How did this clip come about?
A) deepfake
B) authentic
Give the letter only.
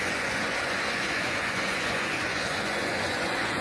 A